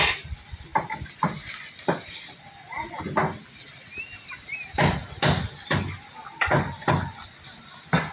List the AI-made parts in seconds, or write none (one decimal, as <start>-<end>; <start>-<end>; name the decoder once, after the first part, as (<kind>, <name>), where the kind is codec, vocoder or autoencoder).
none